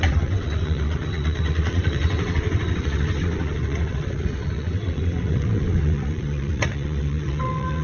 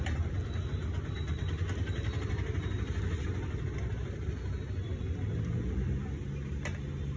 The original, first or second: second